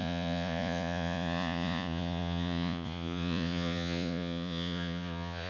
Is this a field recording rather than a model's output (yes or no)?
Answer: no